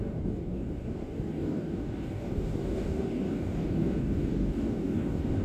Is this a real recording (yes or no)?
no